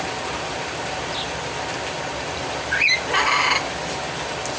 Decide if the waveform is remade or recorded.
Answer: recorded